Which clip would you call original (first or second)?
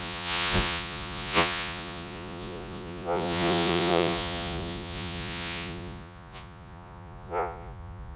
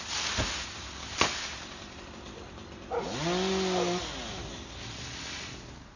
second